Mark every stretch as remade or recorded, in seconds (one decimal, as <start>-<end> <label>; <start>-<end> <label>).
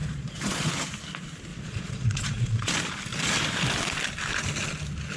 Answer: 0.0-0.7 remade; 0.7-1.5 recorded; 1.5-2.7 remade; 2.7-5.2 recorded